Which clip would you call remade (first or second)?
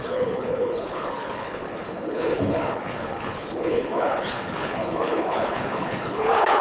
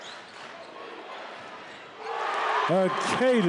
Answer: first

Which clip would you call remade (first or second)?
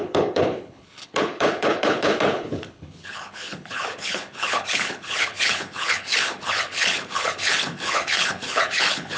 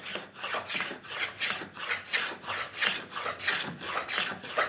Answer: first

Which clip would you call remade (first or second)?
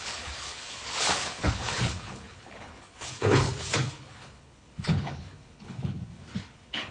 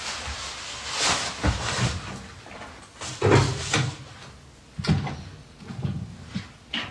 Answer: first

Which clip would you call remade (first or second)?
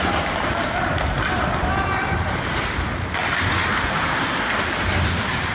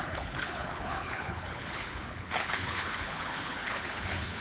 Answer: second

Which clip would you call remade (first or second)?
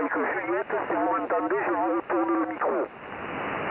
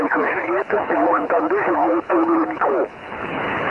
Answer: second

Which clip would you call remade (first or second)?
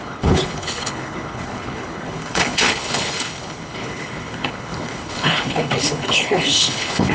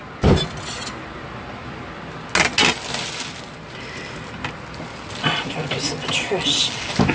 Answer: first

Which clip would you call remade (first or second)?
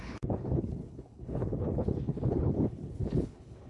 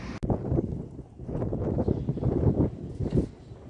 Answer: first